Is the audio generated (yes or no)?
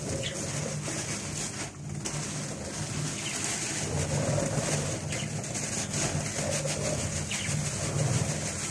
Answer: no